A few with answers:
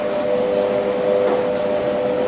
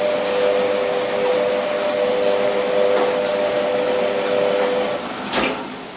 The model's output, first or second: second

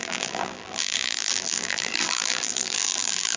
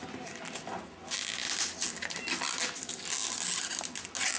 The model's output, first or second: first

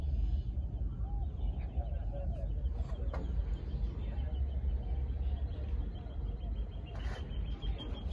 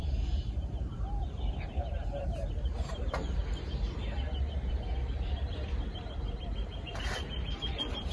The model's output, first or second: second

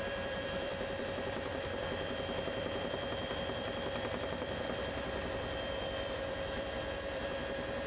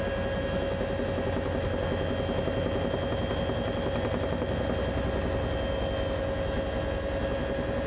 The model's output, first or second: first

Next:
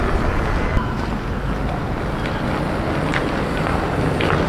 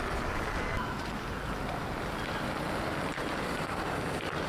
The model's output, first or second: second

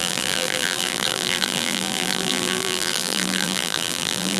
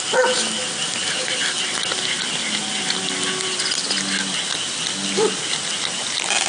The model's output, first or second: first